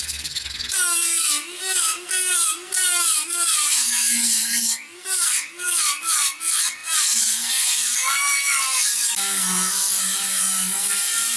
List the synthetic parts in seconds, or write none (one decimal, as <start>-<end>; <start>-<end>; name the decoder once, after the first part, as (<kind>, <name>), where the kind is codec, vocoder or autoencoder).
0.0-11.4 (codec, SNAC)